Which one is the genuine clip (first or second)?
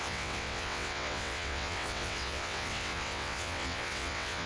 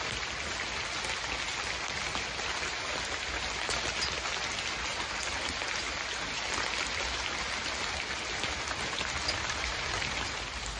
second